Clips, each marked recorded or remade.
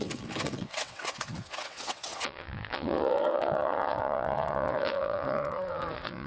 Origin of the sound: remade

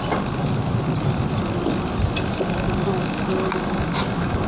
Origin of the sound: recorded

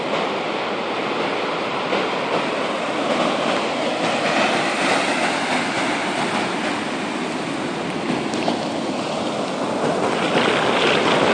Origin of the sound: recorded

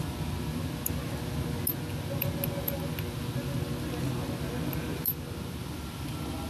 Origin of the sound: recorded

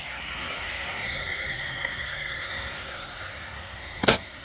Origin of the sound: remade